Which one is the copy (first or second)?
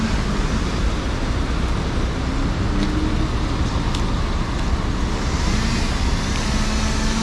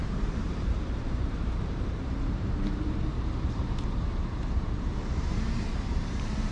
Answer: second